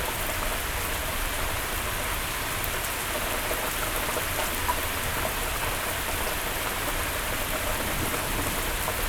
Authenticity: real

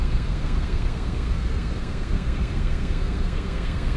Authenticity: fake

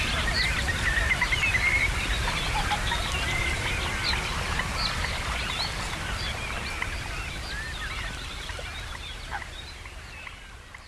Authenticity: real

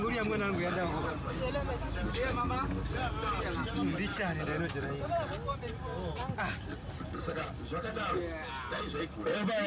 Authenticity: real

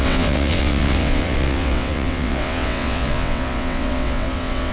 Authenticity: fake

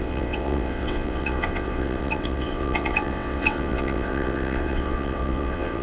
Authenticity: fake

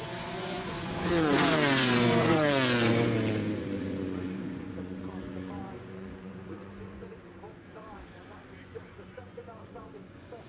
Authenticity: fake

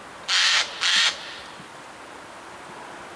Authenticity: real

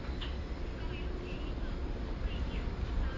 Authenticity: real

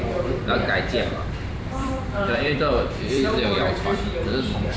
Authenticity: fake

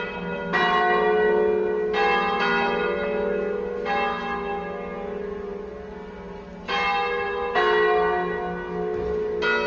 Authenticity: real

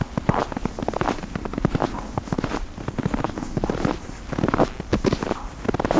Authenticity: real